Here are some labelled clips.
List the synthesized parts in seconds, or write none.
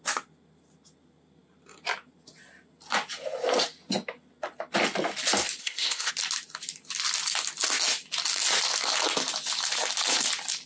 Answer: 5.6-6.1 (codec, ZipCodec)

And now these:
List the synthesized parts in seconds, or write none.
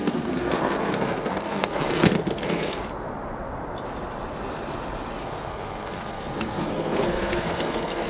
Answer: 0.0-2.8 (codec, SNAC); 5.2-8.1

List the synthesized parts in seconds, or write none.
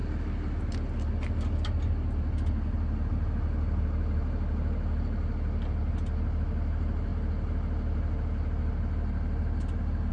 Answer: none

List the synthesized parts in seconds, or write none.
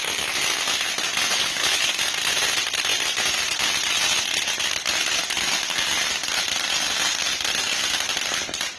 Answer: 1.3-1.9 (codec, HILCodec)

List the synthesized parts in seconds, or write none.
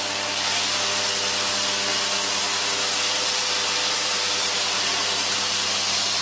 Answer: 1.9-2.4 (vocoder, BigVGAN v2); 3.1-6.2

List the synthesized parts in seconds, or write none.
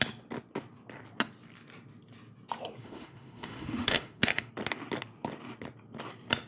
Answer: 2.8-4.5 (autoencoder, DAC-VAE)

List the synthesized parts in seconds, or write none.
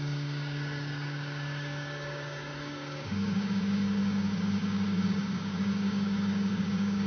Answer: 0.0-7.1 (codec, DAC)